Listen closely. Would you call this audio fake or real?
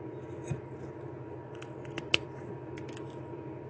real